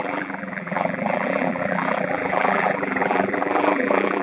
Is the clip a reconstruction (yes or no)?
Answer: yes